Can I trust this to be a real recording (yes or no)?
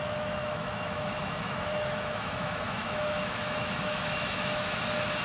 no